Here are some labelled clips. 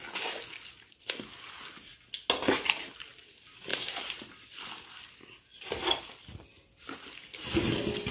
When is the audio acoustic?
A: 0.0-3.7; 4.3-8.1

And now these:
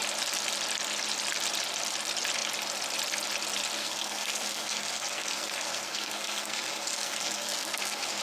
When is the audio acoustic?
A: 0.0-3.8

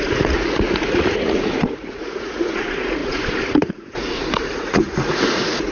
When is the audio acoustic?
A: none

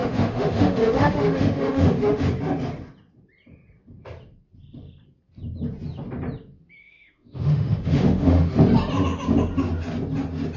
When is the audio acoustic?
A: 2.3-6.8; 8.5-10.6